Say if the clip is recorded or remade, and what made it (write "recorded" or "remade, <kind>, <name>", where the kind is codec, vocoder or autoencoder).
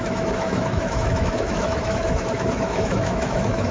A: remade, autoencoder, DAC-VAE